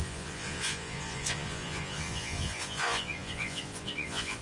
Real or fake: fake